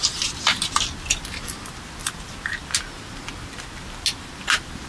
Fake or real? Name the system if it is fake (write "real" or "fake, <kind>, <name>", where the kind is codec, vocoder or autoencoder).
real